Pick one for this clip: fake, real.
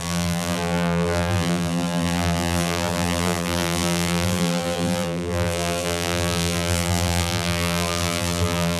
fake